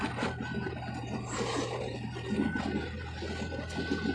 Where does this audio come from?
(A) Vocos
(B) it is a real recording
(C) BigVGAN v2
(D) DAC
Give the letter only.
B